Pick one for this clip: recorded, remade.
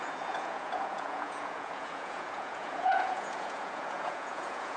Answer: remade